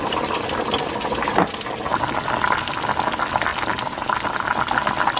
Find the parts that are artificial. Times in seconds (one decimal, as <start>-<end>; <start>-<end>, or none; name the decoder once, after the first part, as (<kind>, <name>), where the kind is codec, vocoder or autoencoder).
none